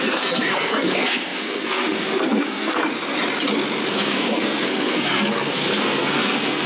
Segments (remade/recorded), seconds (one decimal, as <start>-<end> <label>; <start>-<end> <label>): 0.0-2.8 remade; 2.8-3.9 recorded; 3.9-6.7 remade